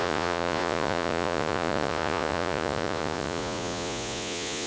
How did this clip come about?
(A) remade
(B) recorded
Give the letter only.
A